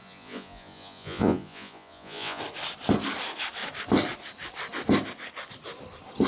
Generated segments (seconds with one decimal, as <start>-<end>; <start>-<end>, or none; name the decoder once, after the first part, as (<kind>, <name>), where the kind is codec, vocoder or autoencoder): 0.0-2.4 (vocoder, Vocos)